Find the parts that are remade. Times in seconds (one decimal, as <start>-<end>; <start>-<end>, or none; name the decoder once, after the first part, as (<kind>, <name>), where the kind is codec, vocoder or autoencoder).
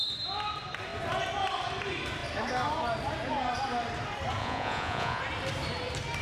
4.4-5.2 (vocoder, Vocos)